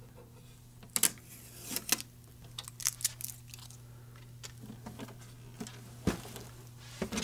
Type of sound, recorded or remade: recorded